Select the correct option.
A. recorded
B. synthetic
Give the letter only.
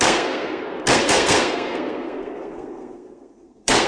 B